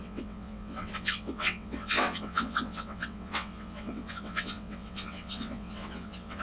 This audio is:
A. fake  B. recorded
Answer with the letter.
A